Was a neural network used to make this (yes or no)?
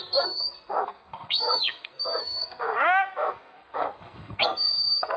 yes